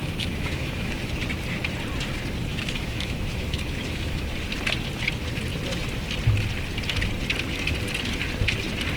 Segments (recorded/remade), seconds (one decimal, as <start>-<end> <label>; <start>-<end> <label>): 0.0-1.0 remade; 1.0-2.5 recorded; 2.5-4.3 remade; 4.3-9.0 recorded